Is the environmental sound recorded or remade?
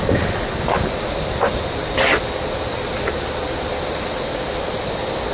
recorded